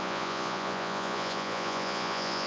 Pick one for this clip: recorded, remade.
remade